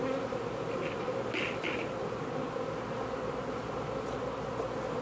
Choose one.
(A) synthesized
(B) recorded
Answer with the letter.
B